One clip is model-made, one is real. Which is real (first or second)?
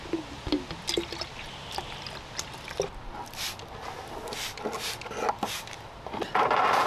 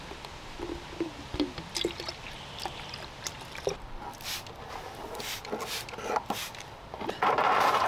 first